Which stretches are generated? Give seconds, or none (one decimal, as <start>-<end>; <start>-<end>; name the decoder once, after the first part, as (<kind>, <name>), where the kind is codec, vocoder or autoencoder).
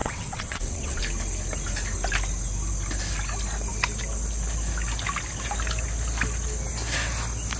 0.0-1.0 (vocoder, WaveNeXt)